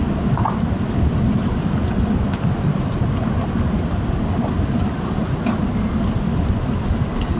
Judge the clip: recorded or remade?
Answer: recorded